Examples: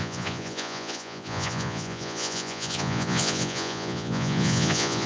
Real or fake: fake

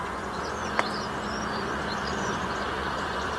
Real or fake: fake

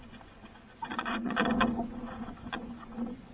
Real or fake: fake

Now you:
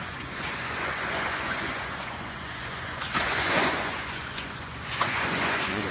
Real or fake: fake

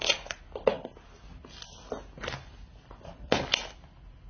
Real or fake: real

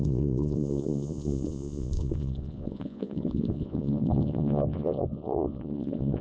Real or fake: fake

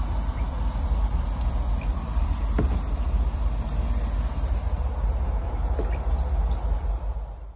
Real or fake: real